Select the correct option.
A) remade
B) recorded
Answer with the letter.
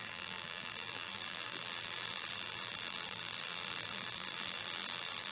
A